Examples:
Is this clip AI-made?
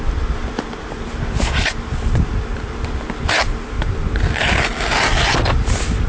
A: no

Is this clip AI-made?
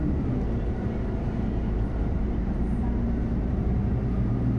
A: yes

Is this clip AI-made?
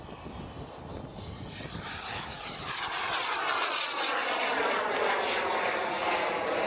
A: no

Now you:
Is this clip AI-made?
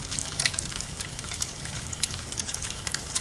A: yes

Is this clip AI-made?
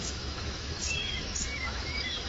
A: yes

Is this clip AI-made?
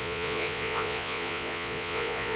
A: yes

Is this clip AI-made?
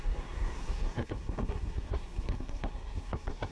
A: yes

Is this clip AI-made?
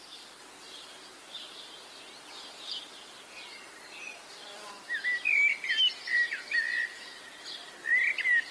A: no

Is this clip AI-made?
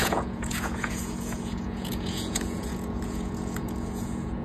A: yes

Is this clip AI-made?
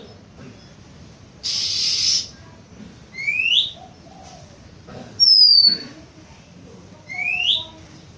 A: no